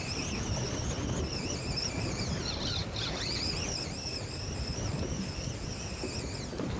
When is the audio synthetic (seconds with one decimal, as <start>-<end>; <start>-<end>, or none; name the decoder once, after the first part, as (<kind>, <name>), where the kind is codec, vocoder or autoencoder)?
none